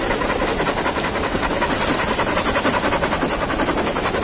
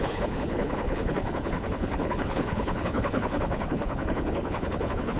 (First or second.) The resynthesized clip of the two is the second